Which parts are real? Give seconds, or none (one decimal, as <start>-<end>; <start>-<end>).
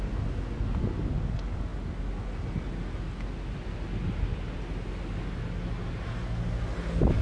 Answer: 0.0-7.2